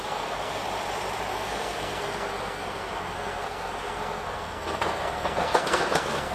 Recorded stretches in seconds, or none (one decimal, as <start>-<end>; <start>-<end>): 0.6-1.3